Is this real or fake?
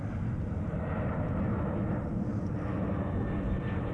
real